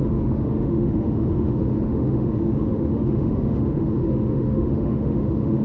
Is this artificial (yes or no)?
yes